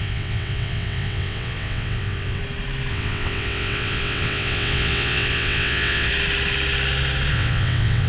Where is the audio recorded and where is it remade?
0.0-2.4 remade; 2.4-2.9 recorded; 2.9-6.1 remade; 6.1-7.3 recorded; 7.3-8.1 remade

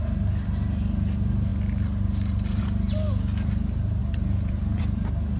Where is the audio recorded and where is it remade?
0.0-5.4 remade

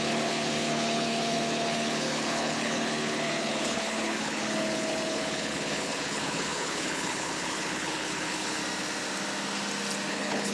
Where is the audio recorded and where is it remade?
0.0-8.6 remade; 8.6-10.1 recorded; 10.1-10.5 remade